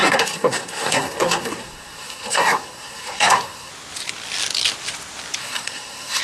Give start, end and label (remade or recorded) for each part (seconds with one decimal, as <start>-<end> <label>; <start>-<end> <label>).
0.0-3.7 remade; 3.7-5.4 recorded; 5.4-6.2 remade